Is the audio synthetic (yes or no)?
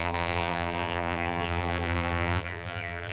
yes